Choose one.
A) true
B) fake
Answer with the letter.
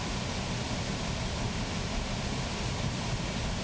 A